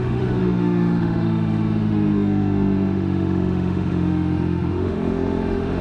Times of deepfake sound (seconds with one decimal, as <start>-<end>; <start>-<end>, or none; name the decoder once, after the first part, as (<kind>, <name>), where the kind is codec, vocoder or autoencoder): 0.0-5.8 (autoencoder, DAC-VAE)